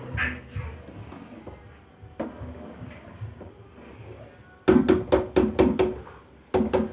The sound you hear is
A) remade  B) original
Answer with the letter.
B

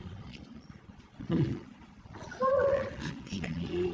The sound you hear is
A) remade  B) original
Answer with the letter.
A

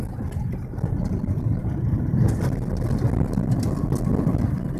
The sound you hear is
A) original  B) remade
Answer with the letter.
A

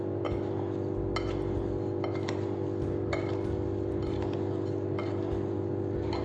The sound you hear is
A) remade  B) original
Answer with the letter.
B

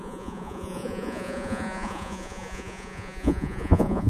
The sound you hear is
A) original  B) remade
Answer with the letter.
B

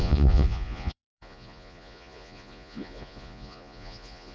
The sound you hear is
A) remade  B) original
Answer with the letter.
A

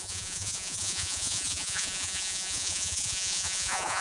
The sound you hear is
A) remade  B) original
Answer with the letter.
A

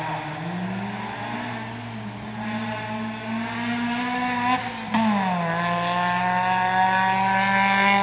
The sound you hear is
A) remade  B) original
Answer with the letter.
B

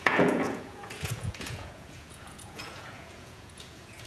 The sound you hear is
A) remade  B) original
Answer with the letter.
A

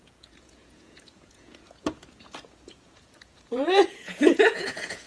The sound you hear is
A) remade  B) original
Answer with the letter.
A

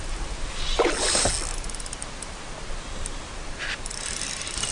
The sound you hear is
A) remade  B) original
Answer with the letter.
B